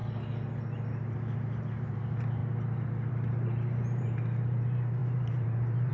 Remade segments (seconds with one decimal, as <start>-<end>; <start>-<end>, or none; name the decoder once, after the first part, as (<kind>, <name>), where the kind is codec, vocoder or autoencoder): 1.8-2.4 (vocoder, BigVGAN v2); 3.1-5.9